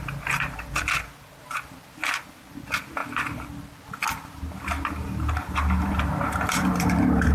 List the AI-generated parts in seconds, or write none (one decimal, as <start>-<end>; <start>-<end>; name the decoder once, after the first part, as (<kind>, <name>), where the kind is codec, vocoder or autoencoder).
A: 0.0-3.0 (vocoder, BigVGAN v2); 4.1-7.3